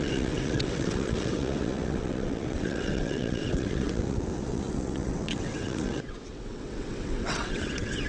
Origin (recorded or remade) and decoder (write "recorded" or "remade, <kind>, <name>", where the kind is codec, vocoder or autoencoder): remade, vocoder, WaveNeXt